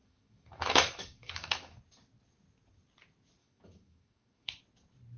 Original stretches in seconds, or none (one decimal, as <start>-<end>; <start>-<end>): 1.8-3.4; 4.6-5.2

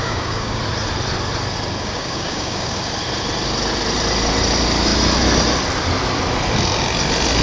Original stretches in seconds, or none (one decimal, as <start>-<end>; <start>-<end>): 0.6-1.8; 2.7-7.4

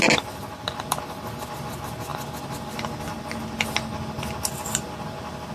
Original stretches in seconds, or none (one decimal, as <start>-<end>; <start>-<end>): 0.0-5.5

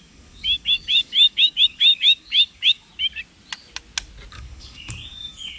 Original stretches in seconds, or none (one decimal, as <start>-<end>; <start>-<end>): 2.9-4.3